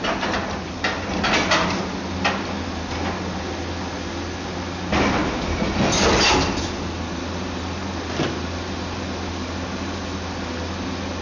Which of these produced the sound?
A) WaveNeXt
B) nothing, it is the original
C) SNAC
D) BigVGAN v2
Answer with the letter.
B